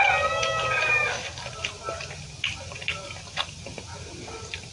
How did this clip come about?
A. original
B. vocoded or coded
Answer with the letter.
A